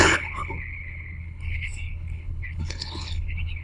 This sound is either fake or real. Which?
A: fake